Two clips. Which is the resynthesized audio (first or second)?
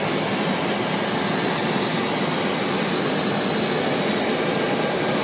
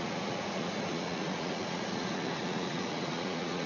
second